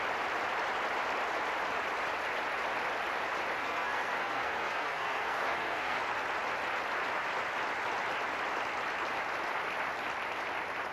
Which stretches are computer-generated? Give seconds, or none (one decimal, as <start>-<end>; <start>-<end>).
3.6-6.0